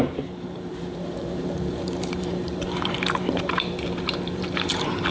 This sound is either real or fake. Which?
fake